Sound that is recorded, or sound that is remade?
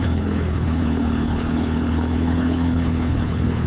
remade